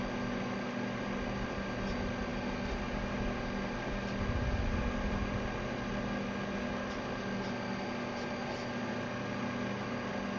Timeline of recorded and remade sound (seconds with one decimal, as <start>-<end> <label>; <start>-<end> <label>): 0.0-10.4 recorded